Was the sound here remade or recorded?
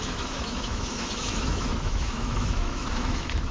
remade